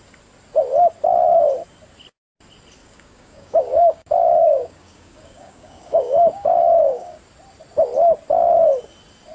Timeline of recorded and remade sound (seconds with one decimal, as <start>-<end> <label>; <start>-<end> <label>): 0.0-2.8 recorded; 2.8-7.2 remade; 7.2-9.3 recorded